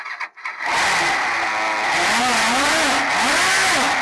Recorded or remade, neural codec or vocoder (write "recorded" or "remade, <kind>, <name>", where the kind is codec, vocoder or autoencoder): recorded